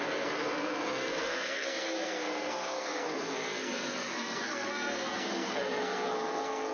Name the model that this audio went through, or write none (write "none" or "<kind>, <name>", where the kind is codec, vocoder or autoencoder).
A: codec, SNAC